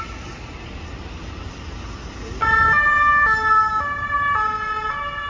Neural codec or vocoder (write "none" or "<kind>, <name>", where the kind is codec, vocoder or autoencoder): none